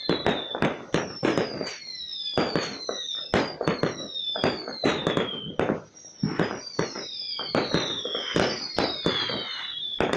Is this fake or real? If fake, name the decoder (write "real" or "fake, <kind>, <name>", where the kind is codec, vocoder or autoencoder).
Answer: real